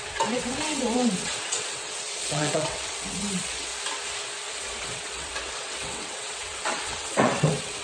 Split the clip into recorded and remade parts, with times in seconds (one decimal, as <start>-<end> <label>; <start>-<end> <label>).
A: 0.0-3.7 remade; 3.7-4.5 recorded; 4.5-7.8 remade

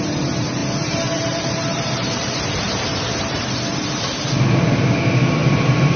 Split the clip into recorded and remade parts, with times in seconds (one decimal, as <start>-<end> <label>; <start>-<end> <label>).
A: 0.0-0.6 recorded; 0.6-4.0 remade; 4.0-5.4 recorded; 5.4-6.0 remade

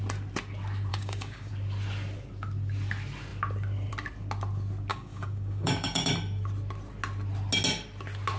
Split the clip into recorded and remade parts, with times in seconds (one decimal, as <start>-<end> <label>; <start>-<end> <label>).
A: 0.0-0.9 recorded; 0.9-1.5 remade; 1.5-4.9 recorded; 4.9-6.1 remade; 6.1-8.4 recorded

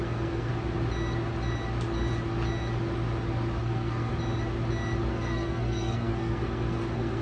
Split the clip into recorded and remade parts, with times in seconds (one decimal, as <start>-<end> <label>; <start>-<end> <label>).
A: 0.0-0.5 remade; 0.5-3.6 recorded; 3.6-4.1 remade; 4.1-5.1 recorded; 5.1-7.2 remade

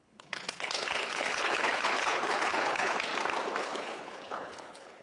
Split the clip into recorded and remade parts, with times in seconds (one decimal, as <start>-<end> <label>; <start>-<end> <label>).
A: 0.0-3.1 remade; 3.1-3.6 recorded; 3.6-5.0 remade

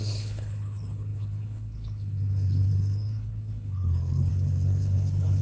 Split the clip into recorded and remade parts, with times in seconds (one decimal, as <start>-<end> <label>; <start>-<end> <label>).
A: 0.0-5.4 remade

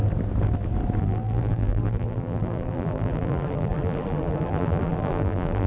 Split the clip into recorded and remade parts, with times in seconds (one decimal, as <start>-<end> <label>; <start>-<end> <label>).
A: 0.0-1.0 recorded; 1.0-5.7 remade